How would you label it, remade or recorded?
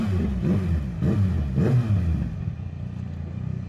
recorded